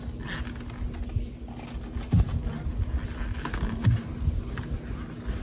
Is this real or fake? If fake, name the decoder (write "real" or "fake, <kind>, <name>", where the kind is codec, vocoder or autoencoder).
real